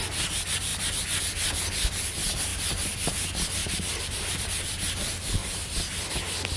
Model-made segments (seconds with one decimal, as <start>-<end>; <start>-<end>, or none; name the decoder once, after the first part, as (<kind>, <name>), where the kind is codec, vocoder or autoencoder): 3.6-4.4 (vocoder, BigVGAN v2)